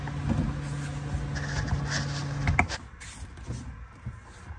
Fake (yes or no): no